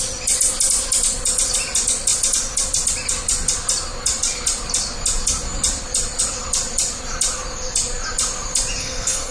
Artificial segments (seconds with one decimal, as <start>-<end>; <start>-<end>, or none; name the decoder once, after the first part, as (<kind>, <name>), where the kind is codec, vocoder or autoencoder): 8.8-9.3 (codec, SNAC)